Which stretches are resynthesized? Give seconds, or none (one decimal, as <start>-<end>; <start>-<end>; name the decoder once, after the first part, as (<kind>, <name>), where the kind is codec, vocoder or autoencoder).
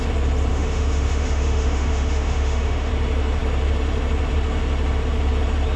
0.5-2.9 (autoencoder, DAC-VAE)